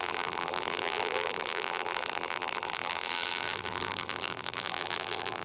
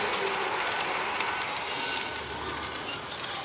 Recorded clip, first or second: second